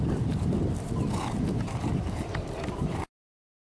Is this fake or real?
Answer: fake